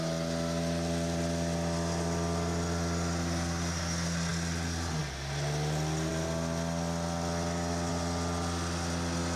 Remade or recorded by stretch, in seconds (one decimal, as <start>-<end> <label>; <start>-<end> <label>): 0.0-9.4 recorded